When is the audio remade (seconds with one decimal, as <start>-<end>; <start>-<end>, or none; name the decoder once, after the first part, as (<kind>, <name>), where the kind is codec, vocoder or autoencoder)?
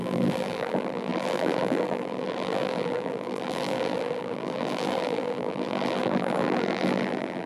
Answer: 0.0-7.5 (vocoder, BigVGAN v2)